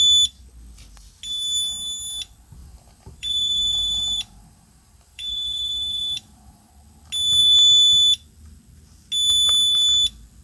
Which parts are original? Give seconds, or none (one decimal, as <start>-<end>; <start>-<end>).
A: 0.0-2.6; 6.7-10.4